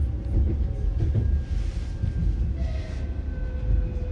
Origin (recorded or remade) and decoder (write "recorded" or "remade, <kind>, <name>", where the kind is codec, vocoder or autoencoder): recorded